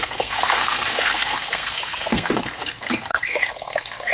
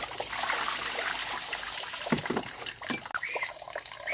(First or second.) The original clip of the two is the second